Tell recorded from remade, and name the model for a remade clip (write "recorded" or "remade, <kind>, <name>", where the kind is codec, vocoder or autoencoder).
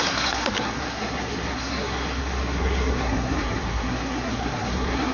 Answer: remade, codec, SNAC